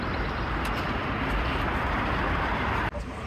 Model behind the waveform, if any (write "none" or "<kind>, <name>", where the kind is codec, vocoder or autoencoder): none